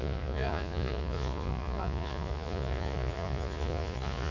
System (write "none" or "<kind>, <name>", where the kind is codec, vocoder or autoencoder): vocoder, Vocos